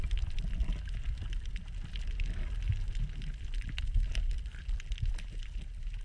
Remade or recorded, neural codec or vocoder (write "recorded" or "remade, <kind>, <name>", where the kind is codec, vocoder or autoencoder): recorded